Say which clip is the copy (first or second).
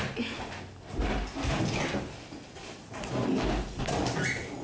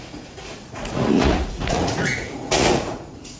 second